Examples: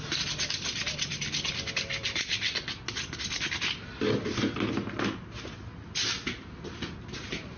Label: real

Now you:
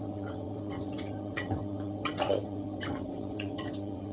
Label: fake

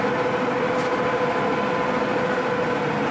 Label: real